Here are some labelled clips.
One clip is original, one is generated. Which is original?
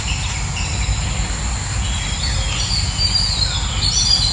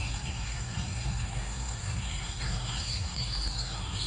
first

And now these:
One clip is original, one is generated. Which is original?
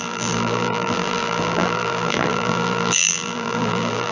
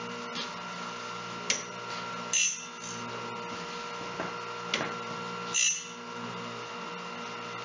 second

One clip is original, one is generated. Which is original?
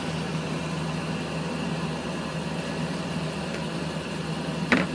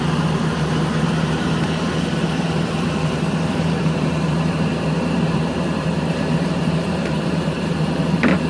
first